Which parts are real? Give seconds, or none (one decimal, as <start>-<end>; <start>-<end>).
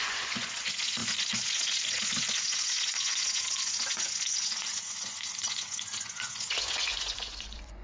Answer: none